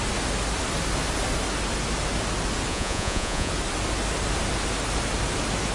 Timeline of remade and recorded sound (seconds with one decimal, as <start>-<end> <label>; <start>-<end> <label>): 0.0-2.7 recorded; 2.7-3.5 remade; 3.5-5.7 recorded